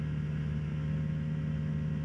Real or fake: real